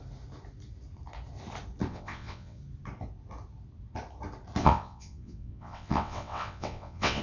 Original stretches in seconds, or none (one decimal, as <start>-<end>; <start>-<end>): 0.0-1.9; 2.6-4.6